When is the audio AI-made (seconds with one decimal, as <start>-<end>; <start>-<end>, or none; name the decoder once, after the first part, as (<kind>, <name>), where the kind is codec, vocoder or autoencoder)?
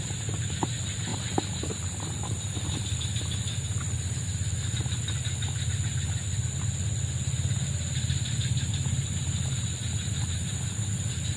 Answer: none